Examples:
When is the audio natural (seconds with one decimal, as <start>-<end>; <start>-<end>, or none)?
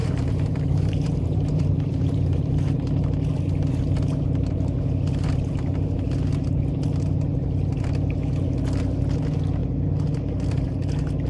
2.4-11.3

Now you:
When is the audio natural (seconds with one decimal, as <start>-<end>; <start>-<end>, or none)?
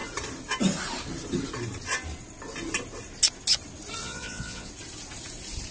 0.0-4.0; 4.7-5.7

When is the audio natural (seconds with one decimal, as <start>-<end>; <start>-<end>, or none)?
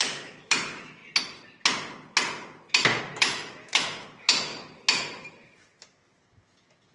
1.0-3.0; 4.5-6.2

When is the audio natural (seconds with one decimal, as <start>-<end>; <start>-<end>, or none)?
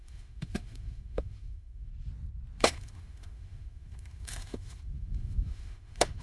1.9-2.6